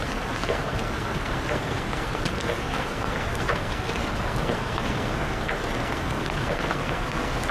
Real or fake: fake